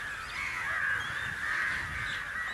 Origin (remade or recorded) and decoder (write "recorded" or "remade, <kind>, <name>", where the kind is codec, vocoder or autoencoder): recorded